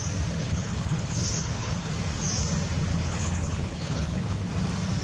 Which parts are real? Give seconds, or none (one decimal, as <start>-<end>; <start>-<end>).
0.0-0.4; 1.9-2.9; 4.5-5.0